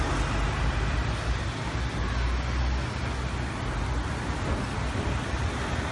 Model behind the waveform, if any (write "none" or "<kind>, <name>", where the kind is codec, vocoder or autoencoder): none